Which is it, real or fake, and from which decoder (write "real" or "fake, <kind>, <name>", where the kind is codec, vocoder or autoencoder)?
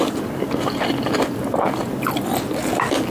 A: real